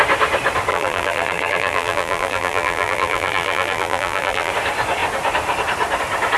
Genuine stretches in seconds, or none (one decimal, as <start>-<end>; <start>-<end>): 0.0-0.7; 4.5-6.4